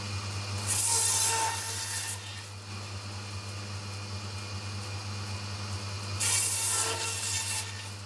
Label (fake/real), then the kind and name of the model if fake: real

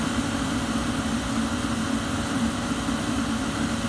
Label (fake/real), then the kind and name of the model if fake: real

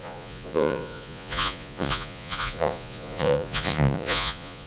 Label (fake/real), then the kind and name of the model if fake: fake, vocoder, Vocos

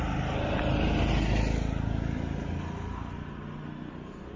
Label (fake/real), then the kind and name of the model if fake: real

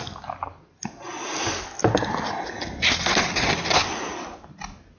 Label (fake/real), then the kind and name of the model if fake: real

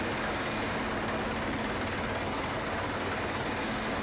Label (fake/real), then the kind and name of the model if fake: real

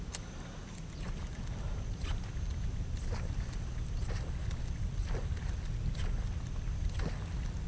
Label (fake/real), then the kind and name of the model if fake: real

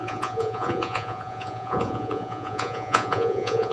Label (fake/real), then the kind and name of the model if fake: fake, vocoder, Vocos